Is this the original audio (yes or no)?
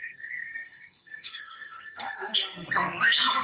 no